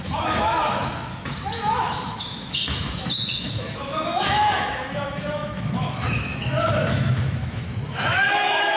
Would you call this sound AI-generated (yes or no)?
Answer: yes